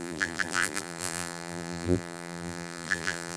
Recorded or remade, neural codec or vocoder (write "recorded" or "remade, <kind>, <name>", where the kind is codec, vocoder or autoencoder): remade, vocoder, BigVGAN v2